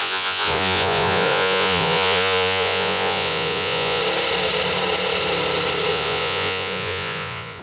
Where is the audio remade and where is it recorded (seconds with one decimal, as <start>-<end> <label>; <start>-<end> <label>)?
0.0-4.0 remade; 4.0-5.9 recorded; 5.9-7.6 remade